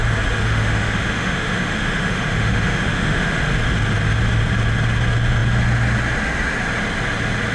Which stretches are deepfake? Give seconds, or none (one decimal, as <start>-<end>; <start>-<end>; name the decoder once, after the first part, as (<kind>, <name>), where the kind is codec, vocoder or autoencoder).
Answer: 0.4-3.4 (autoencoder, DAC-VAE)